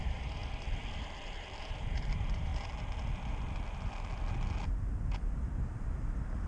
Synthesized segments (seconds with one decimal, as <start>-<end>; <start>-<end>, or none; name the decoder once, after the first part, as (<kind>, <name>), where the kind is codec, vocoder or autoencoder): 0.0-0.4 (vocoder, BigVGAN v2); 1.6-2.5